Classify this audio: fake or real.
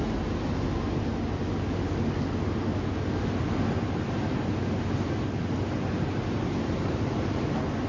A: real